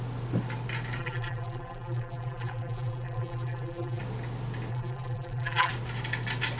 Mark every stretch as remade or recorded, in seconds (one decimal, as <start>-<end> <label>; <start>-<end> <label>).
0.0-1.0 recorded; 1.0-4.0 remade; 4.0-4.7 recorded; 4.7-5.7 remade; 5.7-6.6 recorded